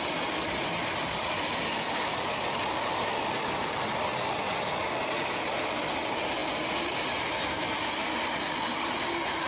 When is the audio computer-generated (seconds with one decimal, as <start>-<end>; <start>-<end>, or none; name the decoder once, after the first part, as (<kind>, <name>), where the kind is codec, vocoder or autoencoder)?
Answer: none